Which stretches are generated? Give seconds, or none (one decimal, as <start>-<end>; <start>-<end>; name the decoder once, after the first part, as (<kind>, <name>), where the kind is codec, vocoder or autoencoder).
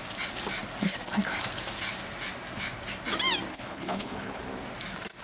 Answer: 3.5-4.4 (codec, HILCodec)